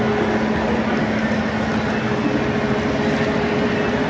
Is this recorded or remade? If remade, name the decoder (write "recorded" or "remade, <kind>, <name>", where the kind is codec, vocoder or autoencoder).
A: recorded